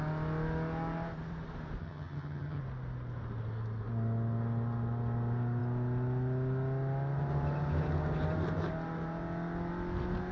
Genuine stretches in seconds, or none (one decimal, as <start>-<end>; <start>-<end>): 0.0-1.8; 2.6-10.3

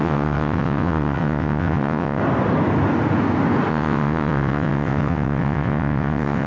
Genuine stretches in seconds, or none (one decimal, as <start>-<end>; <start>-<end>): 2.2-3.7

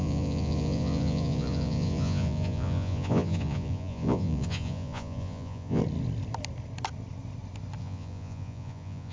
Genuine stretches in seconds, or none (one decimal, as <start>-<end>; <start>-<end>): 5.8-7.8

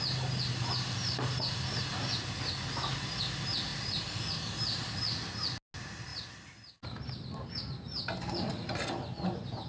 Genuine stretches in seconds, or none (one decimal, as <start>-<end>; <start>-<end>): 0.0-9.7